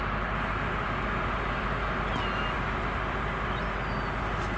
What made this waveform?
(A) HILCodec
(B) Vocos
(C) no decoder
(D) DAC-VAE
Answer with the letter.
C